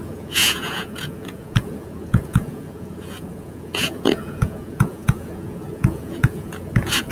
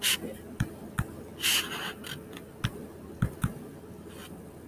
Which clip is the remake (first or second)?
first